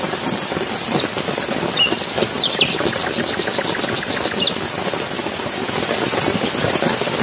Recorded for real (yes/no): yes